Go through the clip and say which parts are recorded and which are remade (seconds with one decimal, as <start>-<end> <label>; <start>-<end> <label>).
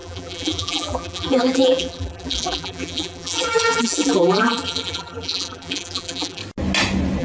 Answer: 0.0-6.4 remade; 6.4-7.2 recorded